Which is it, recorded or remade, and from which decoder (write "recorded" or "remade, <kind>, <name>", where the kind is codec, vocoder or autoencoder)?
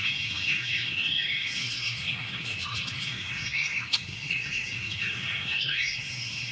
remade, codec, SNAC